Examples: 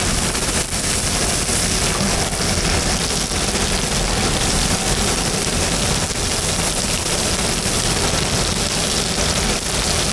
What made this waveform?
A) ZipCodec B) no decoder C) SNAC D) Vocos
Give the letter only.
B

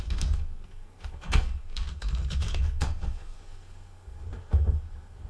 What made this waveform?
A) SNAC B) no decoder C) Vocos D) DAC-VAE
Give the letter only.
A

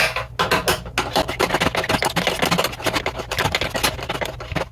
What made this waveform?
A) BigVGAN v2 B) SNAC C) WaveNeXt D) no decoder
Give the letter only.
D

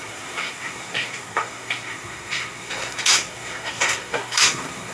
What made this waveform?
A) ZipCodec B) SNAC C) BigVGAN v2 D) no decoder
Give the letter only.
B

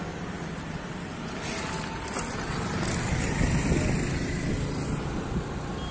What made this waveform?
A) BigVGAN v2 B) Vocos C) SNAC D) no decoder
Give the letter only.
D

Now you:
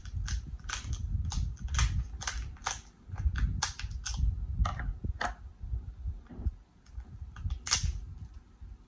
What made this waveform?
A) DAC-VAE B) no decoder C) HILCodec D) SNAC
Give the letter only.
B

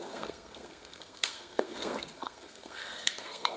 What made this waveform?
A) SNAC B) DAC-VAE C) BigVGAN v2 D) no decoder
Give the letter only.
A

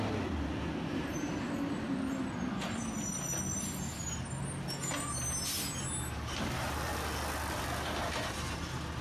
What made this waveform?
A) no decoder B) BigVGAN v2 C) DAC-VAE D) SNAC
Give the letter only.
A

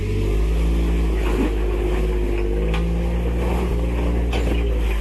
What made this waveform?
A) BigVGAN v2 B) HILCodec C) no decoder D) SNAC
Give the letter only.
C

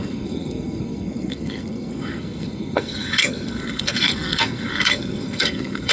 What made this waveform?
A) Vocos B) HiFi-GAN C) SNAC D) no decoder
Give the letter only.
C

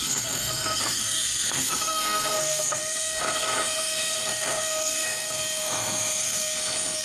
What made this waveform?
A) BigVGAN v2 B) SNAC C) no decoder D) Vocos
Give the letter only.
B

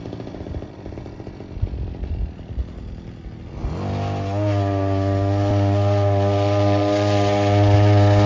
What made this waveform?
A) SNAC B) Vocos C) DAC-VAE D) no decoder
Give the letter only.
D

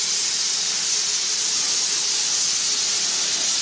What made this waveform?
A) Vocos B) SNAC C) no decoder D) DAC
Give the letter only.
C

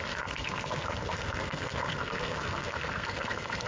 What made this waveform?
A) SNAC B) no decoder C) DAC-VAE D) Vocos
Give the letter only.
A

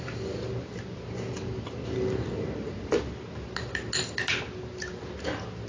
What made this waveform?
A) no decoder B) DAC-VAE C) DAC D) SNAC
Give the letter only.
A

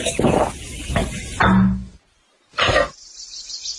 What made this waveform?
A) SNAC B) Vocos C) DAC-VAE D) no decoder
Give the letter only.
D